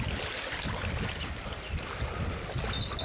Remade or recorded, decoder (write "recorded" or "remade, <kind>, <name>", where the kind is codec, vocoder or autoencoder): recorded